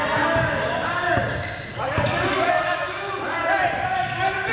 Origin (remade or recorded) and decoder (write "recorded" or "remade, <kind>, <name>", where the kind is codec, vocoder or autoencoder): recorded